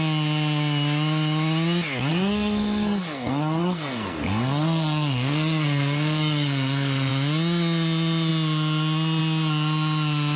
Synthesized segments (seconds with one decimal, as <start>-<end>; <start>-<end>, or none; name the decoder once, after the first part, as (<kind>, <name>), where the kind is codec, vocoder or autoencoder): 2.1-7.1 (codec, SNAC)